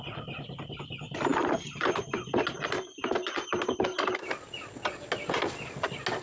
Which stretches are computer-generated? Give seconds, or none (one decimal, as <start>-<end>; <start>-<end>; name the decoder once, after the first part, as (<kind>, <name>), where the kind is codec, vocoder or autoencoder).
none